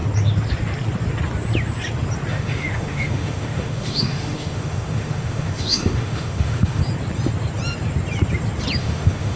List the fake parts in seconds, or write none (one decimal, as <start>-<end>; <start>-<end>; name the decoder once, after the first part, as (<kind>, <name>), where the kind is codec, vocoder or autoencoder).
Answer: 2.3-6.8 (autoencoder, DAC-VAE); 8.8-9.4